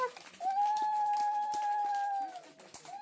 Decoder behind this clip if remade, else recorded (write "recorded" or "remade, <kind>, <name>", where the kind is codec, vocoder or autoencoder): recorded